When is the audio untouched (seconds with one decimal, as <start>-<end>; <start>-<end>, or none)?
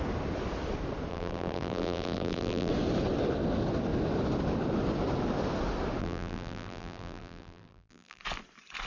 0.0-1.1; 2.7-6.0; 8.2-8.9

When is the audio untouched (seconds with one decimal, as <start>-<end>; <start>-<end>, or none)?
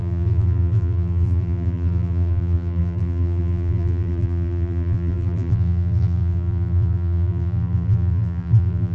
none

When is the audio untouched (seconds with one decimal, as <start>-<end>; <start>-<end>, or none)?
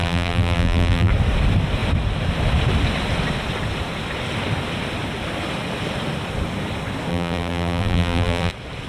1.1-7.1; 8.5-8.9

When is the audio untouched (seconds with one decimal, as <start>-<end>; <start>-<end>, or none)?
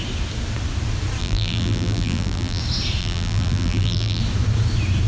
0.0-1.2; 2.6-3.0; 4.2-5.1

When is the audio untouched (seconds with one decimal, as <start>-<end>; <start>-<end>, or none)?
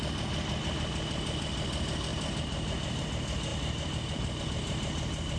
0.0-5.4